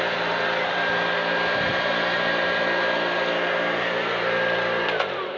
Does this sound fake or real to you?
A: real